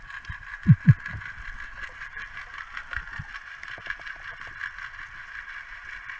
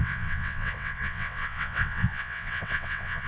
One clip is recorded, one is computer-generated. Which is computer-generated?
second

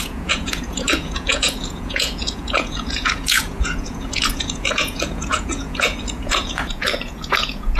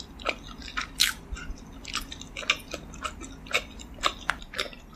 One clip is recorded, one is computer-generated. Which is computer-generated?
first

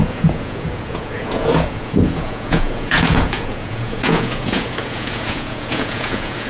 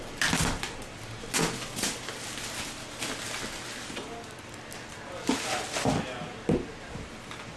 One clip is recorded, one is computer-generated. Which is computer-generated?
first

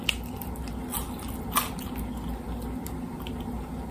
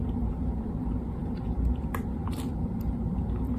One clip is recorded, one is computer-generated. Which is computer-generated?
second